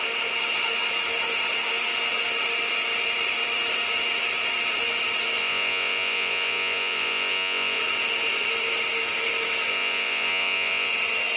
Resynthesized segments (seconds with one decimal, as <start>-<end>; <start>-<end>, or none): 5.4-7.8; 9.7-10.9